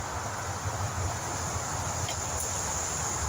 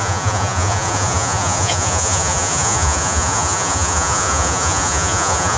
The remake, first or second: second